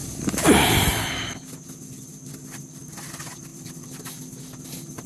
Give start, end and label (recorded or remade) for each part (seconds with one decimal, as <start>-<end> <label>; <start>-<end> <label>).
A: 0.0-3.1 recorded; 3.1-5.1 remade